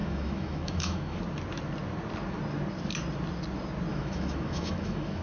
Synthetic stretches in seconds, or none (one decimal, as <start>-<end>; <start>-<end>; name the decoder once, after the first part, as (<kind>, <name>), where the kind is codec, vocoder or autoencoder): 0.0-1.2 (autoencoder, DAC-VAE); 3.9-5.2